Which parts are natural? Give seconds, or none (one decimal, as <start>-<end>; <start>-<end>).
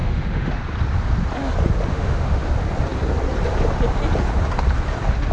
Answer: 0.5-1.9; 2.5-5.3